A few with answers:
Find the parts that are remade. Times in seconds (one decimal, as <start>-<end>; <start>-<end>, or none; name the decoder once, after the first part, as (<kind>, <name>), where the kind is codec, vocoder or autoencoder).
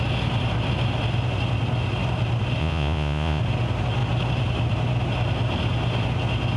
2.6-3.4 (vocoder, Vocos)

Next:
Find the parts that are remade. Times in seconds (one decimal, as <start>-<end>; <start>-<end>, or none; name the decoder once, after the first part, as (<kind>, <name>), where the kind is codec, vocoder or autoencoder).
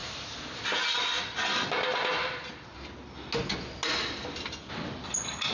none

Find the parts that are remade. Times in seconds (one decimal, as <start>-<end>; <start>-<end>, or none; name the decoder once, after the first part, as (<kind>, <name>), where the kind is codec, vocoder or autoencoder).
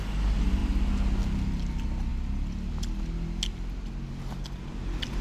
none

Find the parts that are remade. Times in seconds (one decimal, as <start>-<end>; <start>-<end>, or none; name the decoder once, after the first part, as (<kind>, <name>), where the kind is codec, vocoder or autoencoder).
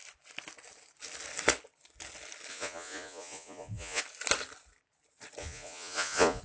2.5-4.0 (vocoder, Vocos); 5.4-6.4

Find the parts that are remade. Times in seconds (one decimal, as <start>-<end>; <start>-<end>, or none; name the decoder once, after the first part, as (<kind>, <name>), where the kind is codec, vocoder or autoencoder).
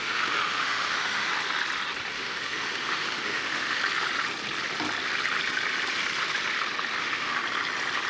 0.0-1.3 (autoencoder, DAC-VAE); 2.1-3.8; 7.0-7.4